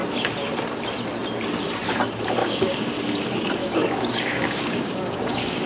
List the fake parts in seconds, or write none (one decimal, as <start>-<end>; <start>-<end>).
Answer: 2.4-2.9; 3.6-5.7